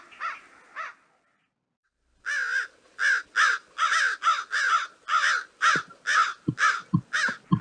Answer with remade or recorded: recorded